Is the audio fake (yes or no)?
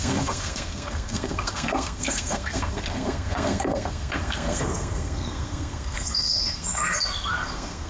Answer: yes